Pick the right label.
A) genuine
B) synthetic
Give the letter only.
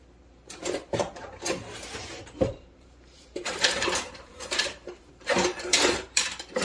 B